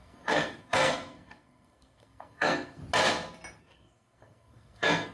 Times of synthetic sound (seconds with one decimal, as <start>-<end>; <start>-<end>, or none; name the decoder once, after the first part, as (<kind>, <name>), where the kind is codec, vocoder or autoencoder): 0.0-2.8 (codec, SNAC); 3.6-5.1